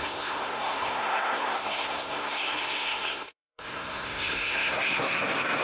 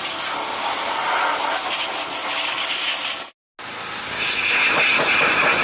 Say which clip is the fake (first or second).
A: first